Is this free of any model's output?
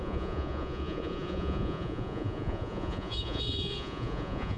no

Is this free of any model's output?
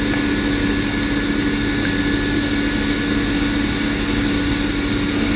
yes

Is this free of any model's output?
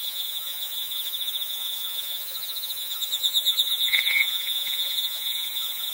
no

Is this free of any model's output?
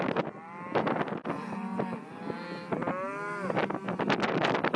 yes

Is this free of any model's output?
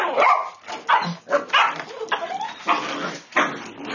yes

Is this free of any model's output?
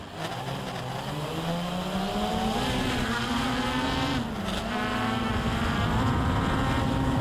yes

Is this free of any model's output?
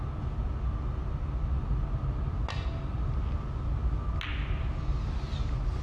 yes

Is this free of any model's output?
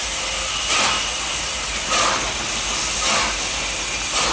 yes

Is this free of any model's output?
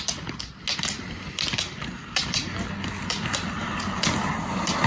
yes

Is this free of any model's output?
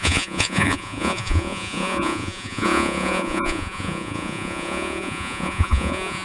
no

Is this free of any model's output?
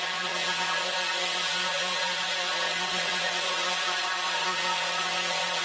no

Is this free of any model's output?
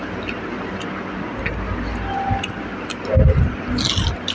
yes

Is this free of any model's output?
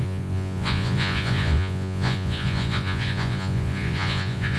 no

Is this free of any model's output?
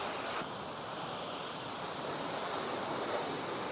yes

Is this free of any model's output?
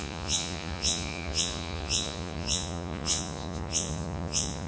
no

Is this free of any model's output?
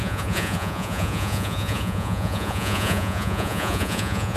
no